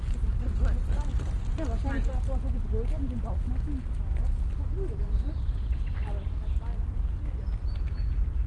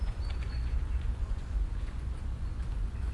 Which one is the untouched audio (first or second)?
first